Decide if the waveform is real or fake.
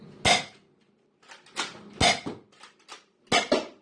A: real